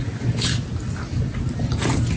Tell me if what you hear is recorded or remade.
recorded